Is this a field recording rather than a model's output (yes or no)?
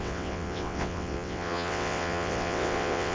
no